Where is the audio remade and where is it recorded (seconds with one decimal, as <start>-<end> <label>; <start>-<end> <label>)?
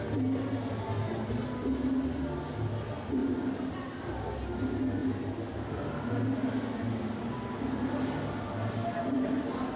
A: 0.0-9.8 recorded